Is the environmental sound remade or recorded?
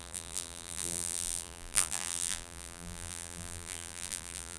remade